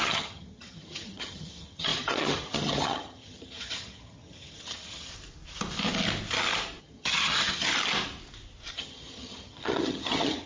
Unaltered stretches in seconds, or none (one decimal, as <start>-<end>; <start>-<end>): 5.1-6.8; 7.7-8.7

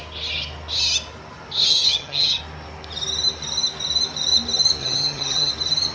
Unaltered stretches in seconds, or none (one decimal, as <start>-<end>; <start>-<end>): 0.0-1.7; 2.4-4.8; 5.5-5.9

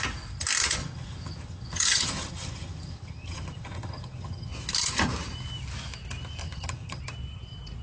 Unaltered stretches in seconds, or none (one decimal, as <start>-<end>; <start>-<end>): 0.0-0.8; 4.5-6.4; 7.0-7.8

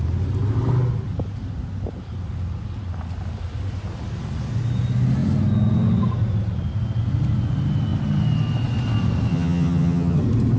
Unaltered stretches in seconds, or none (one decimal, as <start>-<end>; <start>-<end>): 0.0-9.3; 10.2-10.6

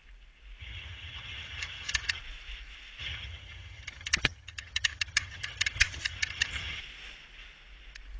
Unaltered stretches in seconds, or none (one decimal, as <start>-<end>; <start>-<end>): 0.0-0.6; 2.2-3.0; 6.8-8.2

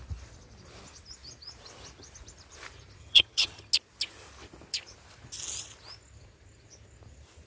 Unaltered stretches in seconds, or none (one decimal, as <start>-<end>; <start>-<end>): 0.0-3.0; 3.7-7.5

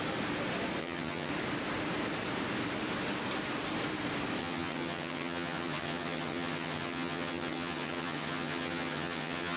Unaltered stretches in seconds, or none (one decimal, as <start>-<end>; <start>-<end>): 0.0-0.8; 1.3-4.4

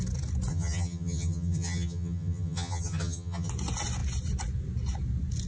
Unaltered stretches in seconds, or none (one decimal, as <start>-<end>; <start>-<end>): 0.0-0.5; 3.5-5.5